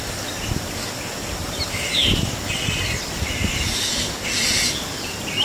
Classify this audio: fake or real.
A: real